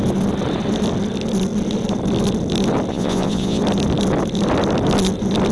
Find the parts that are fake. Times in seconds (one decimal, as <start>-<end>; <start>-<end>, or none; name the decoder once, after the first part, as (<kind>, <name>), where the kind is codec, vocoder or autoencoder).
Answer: 2.9-3.6 (vocoder, Vocos)